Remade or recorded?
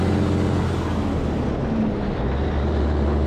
recorded